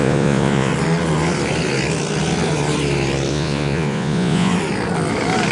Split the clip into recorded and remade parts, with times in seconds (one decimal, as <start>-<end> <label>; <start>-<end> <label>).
0.0-0.7 remade; 0.7-3.3 recorded; 3.3-4.5 remade; 4.5-5.5 recorded